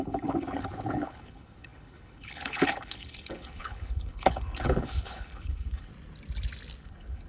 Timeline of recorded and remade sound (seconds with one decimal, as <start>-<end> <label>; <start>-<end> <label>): 0.0-5.9 remade; 5.9-6.8 recorded; 6.8-7.3 remade